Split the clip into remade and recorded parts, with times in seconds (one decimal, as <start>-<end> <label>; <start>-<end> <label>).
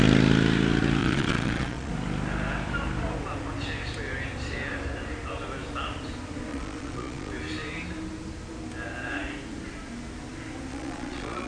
0.0-1.0 recorded; 1.0-1.9 remade; 1.9-6.5 recorded; 6.5-7.3 remade; 7.3-10.7 recorded; 10.7-11.5 remade